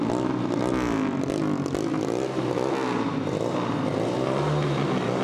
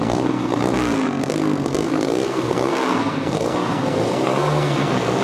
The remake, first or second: second